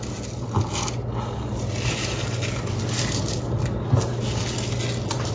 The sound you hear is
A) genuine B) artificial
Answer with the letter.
A